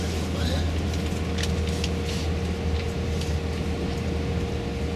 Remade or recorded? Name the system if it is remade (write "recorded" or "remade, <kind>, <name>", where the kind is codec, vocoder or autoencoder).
recorded